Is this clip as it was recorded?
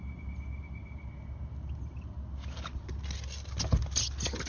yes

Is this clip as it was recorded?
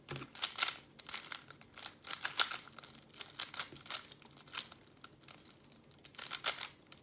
yes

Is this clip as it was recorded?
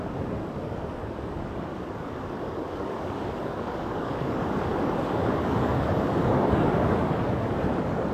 no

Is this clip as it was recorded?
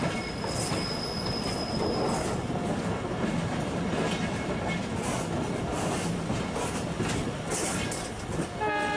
yes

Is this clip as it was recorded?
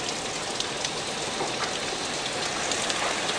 yes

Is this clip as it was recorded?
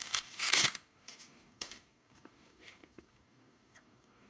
no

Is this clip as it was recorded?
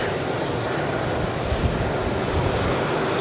yes